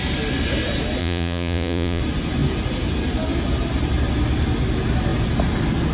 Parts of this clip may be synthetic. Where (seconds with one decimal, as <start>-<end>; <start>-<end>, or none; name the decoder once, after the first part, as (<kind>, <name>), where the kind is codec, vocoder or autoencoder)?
1.0-2.0 (vocoder, Vocos)